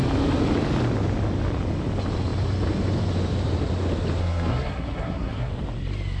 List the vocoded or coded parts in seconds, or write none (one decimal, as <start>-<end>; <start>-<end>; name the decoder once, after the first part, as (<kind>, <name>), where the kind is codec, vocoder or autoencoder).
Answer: 4.2-5.5 (codec, SNAC)